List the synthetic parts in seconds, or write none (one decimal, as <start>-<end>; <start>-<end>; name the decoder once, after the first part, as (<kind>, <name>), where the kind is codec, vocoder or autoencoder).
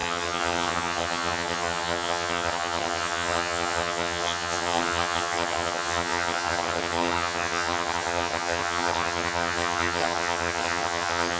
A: 0.0-11.4 (vocoder, HiFi-GAN)